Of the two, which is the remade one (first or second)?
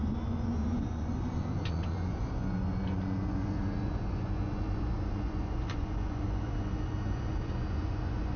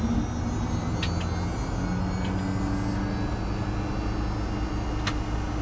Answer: first